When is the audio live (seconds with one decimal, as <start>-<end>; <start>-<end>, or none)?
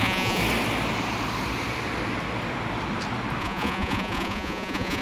0.4-3.4